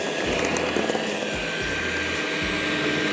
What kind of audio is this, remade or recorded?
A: recorded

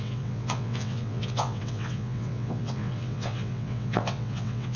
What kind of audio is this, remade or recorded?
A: remade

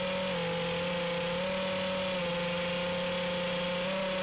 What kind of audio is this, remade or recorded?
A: recorded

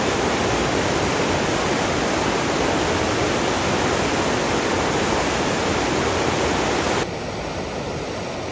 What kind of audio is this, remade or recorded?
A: recorded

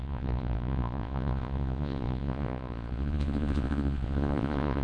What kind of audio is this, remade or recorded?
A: remade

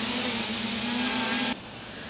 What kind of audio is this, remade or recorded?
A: recorded